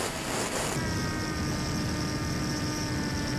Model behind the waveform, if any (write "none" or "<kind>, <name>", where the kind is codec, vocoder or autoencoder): none